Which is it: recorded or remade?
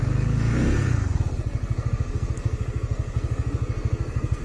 remade